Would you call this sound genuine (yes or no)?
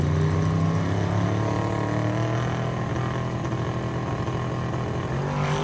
yes